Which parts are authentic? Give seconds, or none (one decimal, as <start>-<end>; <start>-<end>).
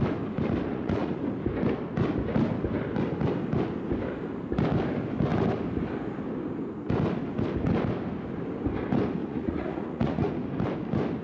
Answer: 0.0-0.7; 1.2-9.2; 10.3-11.2